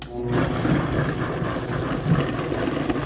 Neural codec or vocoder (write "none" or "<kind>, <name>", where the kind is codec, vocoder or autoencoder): none